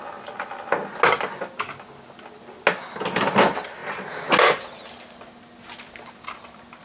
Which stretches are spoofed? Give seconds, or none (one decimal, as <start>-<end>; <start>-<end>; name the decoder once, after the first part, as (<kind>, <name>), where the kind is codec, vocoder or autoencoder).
none